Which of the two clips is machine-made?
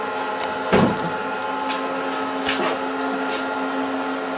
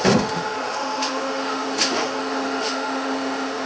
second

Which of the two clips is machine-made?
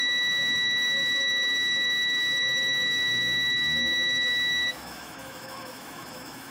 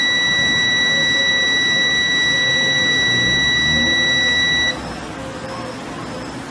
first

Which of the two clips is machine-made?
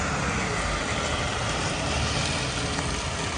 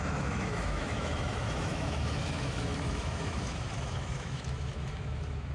second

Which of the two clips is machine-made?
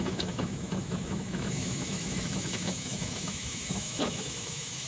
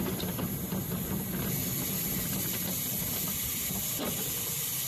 first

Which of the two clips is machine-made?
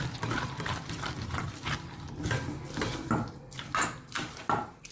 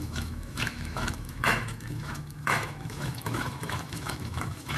second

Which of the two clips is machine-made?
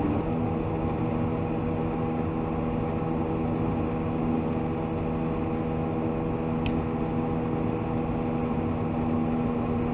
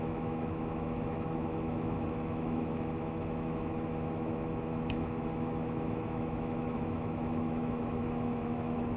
second